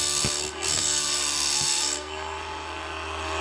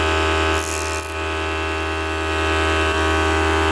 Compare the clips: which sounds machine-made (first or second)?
first